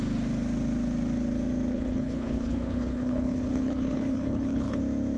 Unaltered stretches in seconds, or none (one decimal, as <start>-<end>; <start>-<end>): 0.0-1.7; 4.8-5.2